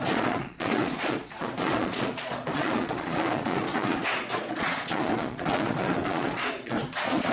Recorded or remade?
remade